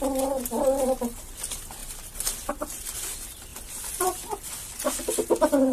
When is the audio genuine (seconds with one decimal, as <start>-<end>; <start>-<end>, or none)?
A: 0.0-3.5; 4.1-5.7